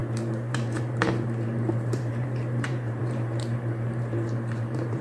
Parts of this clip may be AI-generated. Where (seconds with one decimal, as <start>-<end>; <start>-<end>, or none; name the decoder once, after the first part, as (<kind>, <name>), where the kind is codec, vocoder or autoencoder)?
0.0-5.0 (vocoder, BigVGAN v2)